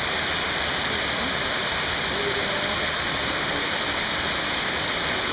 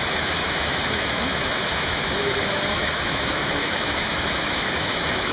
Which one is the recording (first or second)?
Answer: first